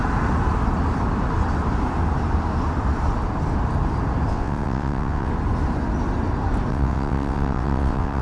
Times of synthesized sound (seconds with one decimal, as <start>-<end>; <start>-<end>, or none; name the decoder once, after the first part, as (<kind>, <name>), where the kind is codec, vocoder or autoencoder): 4.3-5.3 (vocoder, WaveNeXt); 6.7-8.2